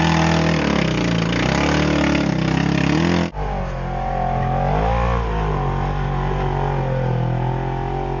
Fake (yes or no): no